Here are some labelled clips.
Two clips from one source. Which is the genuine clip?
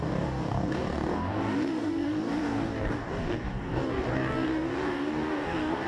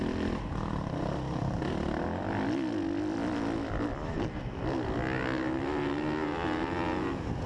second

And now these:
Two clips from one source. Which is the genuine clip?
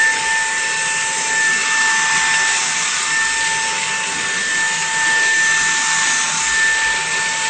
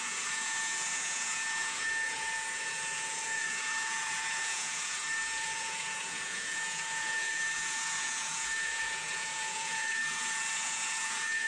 first